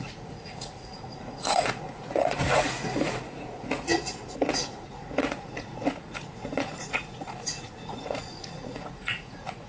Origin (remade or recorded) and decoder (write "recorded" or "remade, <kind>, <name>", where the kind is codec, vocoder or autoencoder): remade, vocoder, Vocos